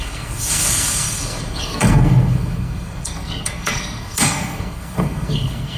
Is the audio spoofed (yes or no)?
yes